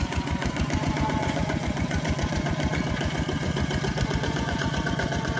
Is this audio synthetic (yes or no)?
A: yes